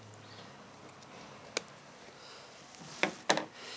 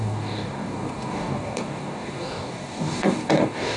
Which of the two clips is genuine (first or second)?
first